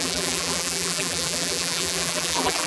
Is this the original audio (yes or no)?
no